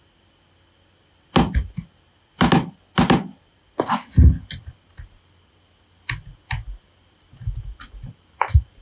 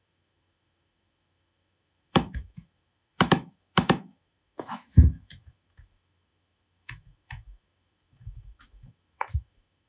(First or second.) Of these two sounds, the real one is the first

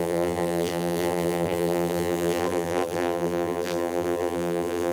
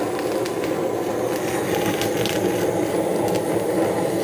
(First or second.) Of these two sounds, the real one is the second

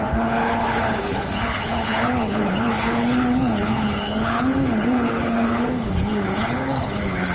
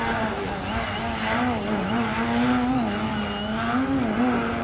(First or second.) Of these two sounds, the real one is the second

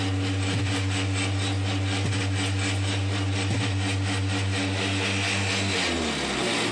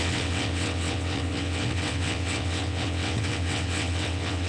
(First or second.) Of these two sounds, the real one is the first